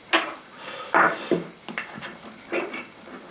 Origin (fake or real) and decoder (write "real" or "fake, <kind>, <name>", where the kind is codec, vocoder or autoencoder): real